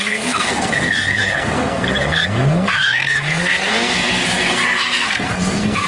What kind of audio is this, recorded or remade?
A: remade